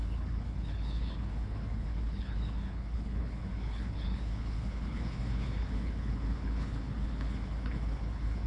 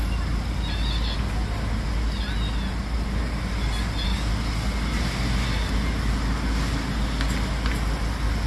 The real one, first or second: second